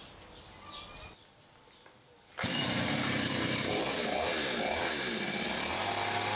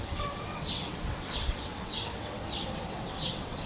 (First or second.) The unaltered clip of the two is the first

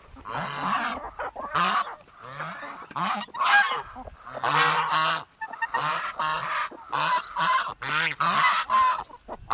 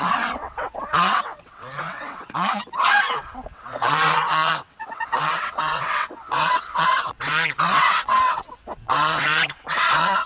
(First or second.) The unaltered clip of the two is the first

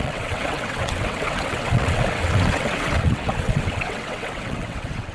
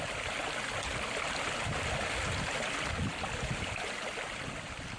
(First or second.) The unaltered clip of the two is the second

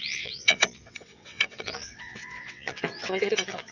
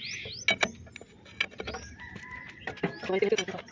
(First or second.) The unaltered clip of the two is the second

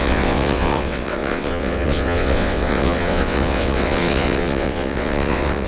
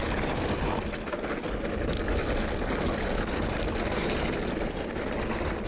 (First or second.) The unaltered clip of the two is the second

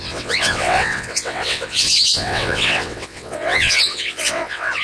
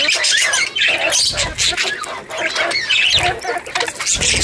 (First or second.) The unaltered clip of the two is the second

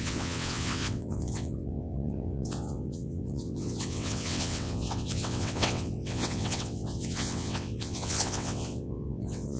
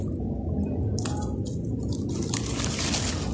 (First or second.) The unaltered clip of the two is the second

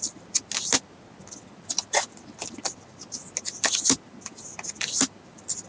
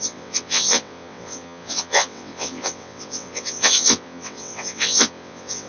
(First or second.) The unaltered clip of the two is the first